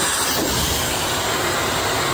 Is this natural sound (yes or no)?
no